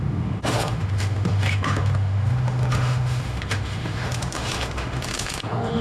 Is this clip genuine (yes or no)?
no